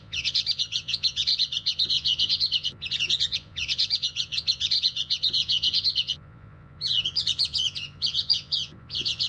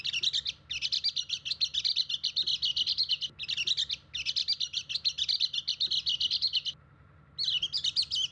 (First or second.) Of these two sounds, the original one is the second